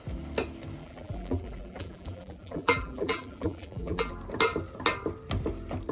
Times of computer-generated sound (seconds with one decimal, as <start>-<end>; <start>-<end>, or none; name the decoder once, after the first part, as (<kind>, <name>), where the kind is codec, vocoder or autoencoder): 0.8-4.1 (vocoder, BigVGAN v2)